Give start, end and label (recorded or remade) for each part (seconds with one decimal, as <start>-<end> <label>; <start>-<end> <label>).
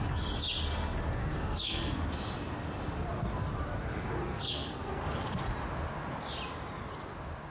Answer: 0.0-1.2 recorded; 1.2-2.0 remade; 2.0-4.2 recorded; 4.2-5.0 remade; 5.0-7.5 recorded